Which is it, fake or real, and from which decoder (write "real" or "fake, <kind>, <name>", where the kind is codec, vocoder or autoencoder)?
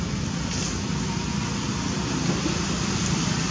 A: real